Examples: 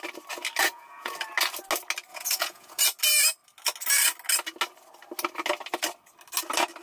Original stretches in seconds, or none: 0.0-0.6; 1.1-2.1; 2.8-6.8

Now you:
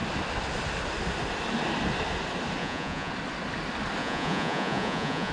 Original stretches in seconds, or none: 0.0-2.6; 3.1-4.0

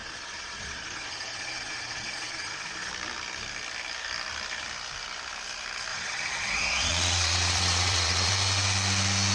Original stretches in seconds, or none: 2.9-5.9; 8.3-9.3

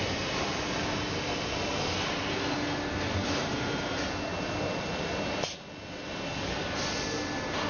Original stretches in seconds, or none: 0.0-7.7

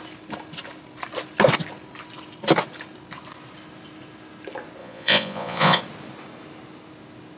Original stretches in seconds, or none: 0.0-4.8; 5.8-7.4